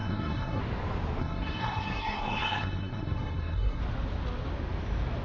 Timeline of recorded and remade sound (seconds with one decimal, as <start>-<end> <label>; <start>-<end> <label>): 0.0-0.6 remade; 0.6-1.2 recorded; 1.2-3.8 remade; 3.8-5.2 recorded